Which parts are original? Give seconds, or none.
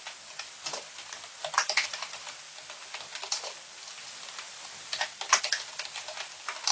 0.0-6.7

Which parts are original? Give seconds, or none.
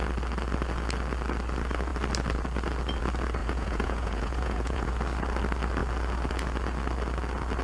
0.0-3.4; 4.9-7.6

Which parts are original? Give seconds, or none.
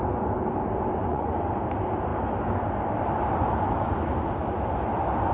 0.0-1.0; 1.5-5.3